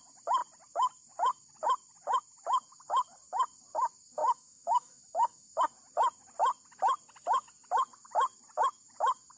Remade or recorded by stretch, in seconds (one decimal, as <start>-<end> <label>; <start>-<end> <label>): 0.0-4.2 recorded; 4.2-5.6 remade; 5.6-9.4 recorded